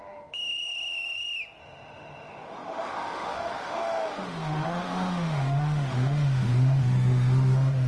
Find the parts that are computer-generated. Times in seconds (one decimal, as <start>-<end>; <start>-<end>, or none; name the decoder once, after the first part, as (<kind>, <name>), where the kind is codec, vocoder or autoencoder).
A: 0.0-0.5 (autoencoder, DAC-VAE); 1.6-7.9